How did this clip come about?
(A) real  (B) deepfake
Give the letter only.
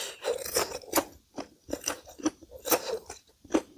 A